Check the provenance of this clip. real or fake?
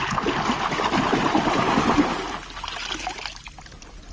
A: real